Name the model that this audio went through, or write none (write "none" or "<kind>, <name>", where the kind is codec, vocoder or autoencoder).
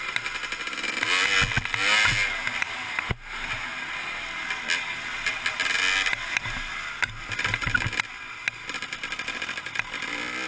none